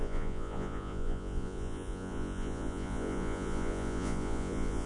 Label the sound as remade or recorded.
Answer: remade